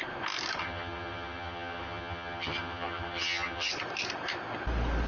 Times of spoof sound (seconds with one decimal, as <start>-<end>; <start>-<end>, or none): 0.6-3.7

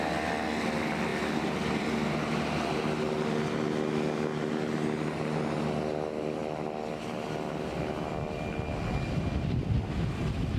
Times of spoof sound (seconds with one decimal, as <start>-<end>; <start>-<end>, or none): none

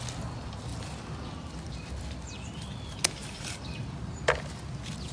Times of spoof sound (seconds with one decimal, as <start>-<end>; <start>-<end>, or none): 3.2-4.1

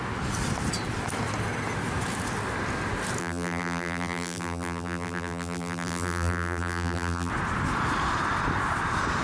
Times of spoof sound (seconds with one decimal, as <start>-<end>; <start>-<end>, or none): 3.2-7.3